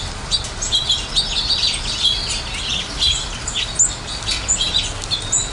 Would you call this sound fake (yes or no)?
no